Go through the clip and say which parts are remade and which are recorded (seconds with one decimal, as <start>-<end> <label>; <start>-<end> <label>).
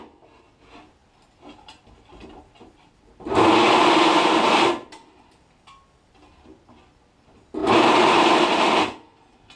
0.0-7.6 recorded; 7.6-8.4 remade; 8.4-9.6 recorded